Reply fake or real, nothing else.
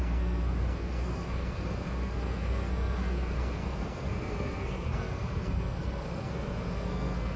fake